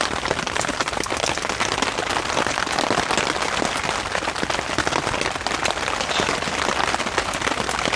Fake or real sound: real